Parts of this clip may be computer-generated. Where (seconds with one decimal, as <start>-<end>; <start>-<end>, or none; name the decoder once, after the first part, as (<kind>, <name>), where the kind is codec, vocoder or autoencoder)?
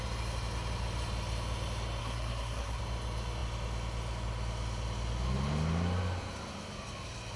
2.0-2.8 (codec, SNAC)